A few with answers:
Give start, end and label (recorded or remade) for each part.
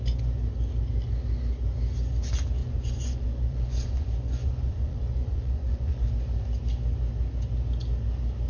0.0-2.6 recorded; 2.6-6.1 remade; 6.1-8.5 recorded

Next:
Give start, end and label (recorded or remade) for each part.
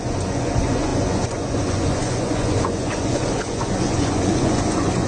0.0-5.1 remade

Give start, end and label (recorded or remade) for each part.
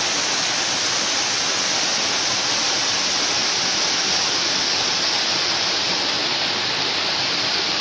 0.0-7.8 recorded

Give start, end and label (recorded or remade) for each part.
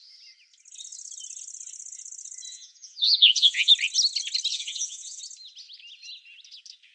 0.0-2.5 recorded; 2.5-3.7 remade; 3.7-4.5 recorded; 4.5-5.2 remade; 5.2-6.9 recorded